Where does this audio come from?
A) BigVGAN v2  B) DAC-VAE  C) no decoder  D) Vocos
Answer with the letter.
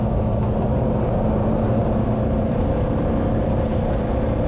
C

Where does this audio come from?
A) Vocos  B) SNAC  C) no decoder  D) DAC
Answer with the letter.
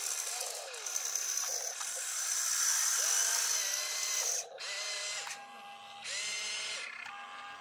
C